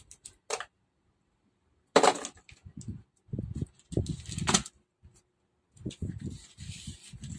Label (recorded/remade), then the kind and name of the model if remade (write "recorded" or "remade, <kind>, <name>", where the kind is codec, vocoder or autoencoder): recorded